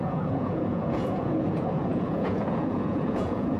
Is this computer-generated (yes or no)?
yes